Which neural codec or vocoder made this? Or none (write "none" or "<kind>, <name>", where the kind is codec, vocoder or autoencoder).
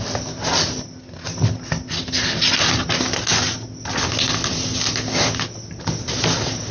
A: none